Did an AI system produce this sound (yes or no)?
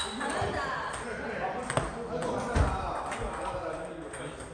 no